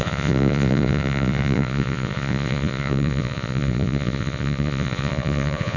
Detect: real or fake fake